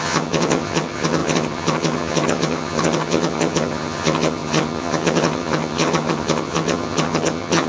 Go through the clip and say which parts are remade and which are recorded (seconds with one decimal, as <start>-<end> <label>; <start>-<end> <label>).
0.0-7.7 remade